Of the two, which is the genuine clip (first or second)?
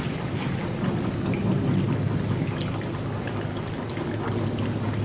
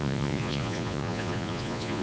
first